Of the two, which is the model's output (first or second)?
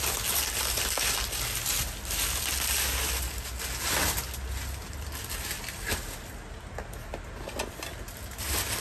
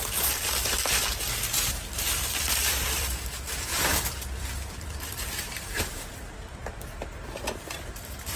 second